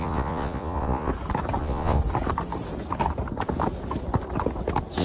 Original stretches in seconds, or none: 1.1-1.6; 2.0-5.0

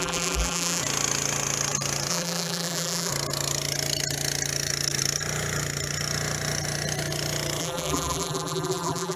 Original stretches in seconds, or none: 0.8-2.1; 3.1-7.6

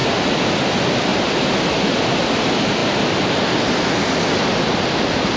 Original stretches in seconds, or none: 0.0-5.4